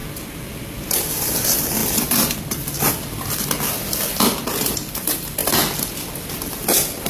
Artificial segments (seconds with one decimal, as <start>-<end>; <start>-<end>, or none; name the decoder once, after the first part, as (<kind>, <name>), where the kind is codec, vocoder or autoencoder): 0.0-5.4 (vocoder, BigVGAN v2); 6.5-7.1